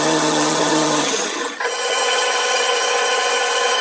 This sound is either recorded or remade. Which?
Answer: remade